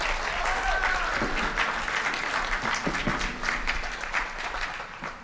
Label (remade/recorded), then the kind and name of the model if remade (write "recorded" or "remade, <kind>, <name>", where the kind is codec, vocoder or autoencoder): recorded